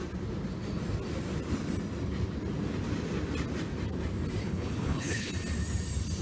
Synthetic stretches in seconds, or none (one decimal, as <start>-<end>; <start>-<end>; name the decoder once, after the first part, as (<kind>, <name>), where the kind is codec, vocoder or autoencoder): 4.4-5.3 (codec, HILCodec)